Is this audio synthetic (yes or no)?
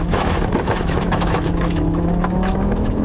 yes